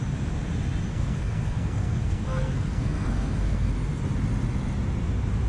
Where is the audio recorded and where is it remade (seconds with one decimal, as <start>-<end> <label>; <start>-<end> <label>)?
0.0-0.9 recorded; 0.9-3.7 remade; 3.7-5.5 recorded